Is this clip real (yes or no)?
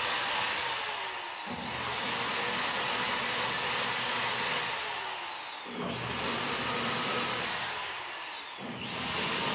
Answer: yes